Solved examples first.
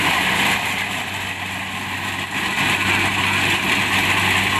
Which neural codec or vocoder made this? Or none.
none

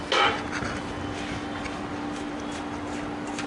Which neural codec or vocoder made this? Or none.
none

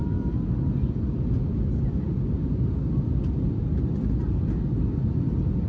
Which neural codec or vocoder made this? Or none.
none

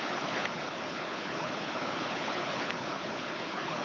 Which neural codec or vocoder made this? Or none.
codec, HILCodec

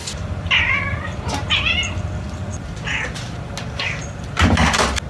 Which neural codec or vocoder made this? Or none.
none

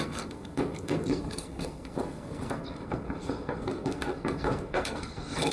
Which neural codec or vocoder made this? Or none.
codec, SNAC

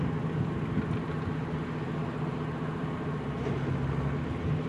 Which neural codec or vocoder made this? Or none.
none